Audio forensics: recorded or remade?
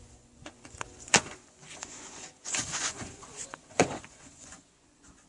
remade